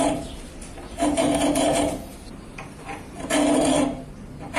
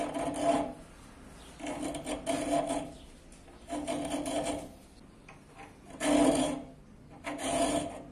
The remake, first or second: first